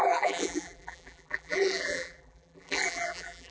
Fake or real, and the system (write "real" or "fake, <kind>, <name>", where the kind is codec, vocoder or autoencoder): fake, vocoder, BigVGAN v2